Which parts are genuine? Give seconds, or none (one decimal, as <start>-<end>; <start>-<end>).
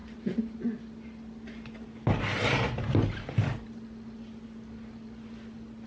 0.6-5.9